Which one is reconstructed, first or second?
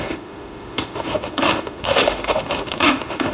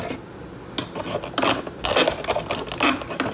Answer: first